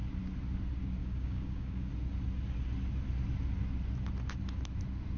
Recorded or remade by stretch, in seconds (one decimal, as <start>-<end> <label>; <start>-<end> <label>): 0.0-1.0 recorded; 1.0-1.9 remade; 1.9-5.2 recorded